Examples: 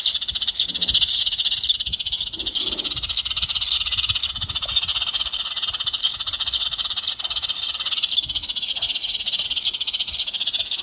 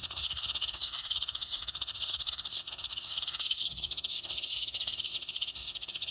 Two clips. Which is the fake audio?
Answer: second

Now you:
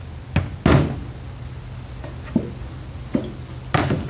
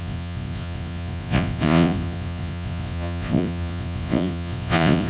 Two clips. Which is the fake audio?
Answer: second